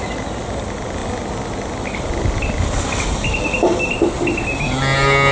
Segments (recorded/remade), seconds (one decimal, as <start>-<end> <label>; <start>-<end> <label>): 0.0-5.3 recorded